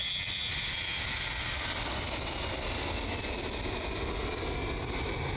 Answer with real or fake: real